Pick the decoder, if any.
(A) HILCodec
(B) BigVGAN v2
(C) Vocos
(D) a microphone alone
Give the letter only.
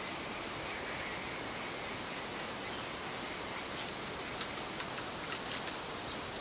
D